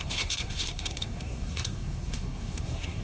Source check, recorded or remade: remade